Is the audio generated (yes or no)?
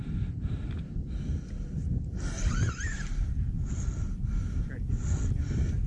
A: no